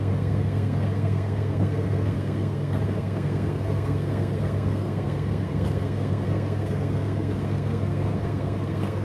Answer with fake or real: fake